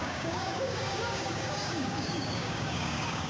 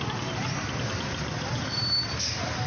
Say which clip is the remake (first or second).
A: first